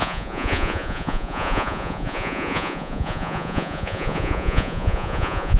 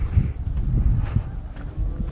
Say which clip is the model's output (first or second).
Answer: first